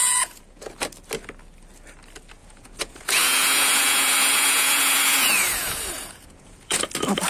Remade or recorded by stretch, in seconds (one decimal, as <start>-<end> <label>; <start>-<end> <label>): 0.0-0.7 remade; 0.7-2.4 recorded; 2.4-6.8 remade; 6.8-7.3 recorded